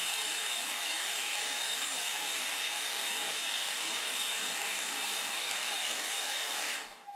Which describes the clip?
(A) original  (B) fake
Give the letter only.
B